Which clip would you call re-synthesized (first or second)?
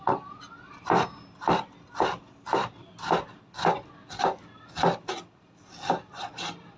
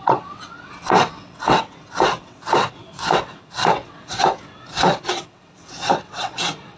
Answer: second